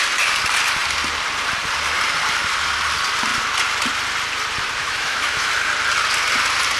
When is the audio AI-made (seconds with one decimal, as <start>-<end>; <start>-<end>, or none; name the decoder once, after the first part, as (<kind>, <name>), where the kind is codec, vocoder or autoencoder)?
4.8-5.5 (autoencoder, DAC-VAE)